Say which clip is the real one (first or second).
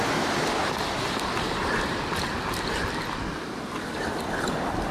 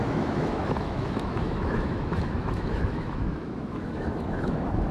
first